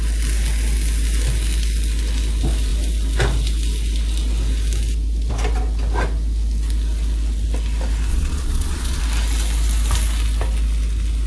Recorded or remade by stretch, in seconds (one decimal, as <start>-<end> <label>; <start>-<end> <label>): 0.0-8.1 recorded; 8.1-9.0 remade; 9.0-11.3 recorded